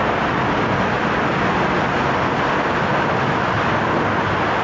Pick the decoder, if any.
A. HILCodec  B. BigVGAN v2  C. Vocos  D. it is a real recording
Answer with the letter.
D